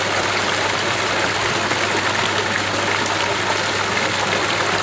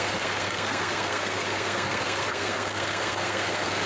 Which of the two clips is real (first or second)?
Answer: first